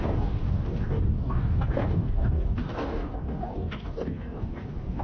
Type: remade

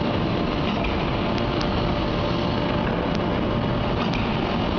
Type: recorded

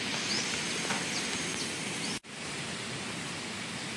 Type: recorded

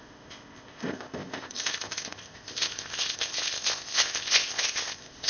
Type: remade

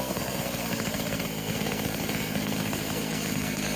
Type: remade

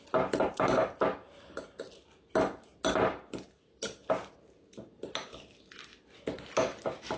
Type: recorded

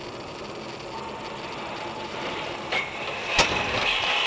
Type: recorded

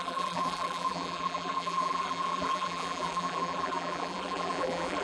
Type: remade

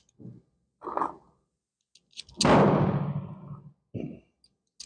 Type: recorded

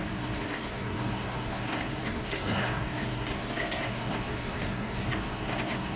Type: remade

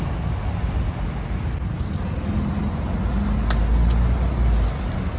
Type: recorded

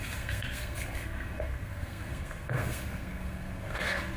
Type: remade